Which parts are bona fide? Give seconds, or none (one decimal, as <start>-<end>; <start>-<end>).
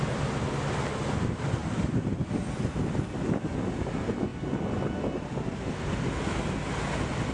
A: 0.0-7.3